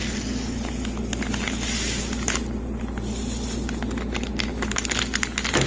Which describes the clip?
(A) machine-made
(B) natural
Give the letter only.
B